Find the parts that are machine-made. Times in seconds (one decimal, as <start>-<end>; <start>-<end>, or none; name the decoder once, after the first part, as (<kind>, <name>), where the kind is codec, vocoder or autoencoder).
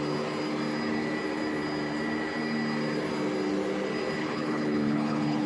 4.2-5.5 (codec, HILCodec)